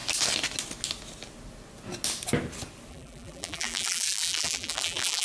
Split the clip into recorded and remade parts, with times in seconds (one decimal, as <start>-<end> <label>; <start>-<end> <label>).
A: 0.0-2.9 recorded; 2.9-5.2 remade